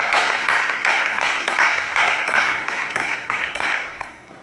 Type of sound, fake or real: fake